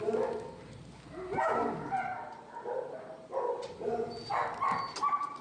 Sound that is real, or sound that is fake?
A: real